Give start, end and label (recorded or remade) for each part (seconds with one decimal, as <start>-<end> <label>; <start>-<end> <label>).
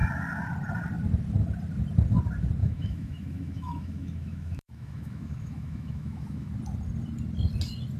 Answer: 0.0-2.6 recorded; 2.6-6.5 remade; 6.5-8.0 recorded